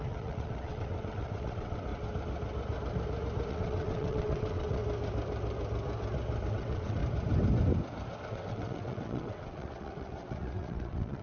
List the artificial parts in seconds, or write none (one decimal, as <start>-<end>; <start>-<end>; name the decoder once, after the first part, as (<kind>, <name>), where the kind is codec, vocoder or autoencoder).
0.0-1.9 (vocoder, WaveNeXt); 3.5-4.8; 6.5-7.0; 8.3-11.2